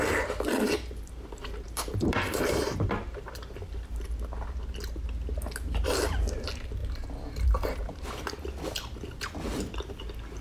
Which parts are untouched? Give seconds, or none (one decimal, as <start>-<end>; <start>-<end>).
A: 0.0-0.5; 4.7-6.8; 8.4-10.4